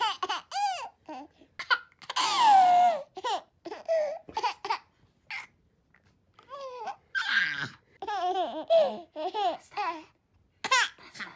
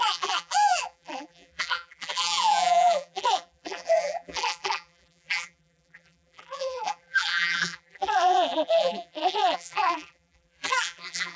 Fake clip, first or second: second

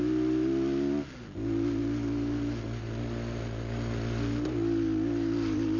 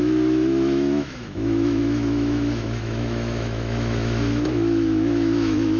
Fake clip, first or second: second